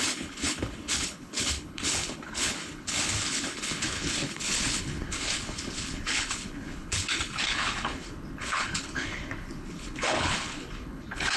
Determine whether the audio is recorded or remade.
remade